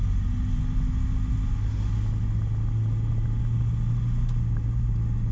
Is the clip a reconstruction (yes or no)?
no